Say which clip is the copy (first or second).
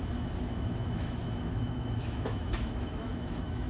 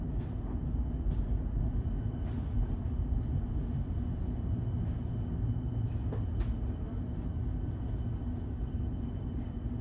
first